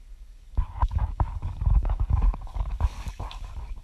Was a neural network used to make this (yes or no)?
yes